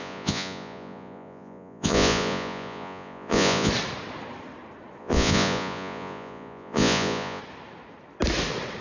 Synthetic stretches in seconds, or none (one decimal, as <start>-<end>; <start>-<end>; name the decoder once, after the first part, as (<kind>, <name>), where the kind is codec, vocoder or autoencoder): 0.0-3.7 (vocoder, Vocos); 5.0-7.4